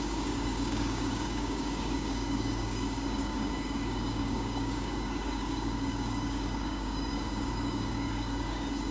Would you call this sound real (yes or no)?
no